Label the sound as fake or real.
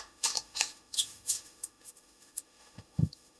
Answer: fake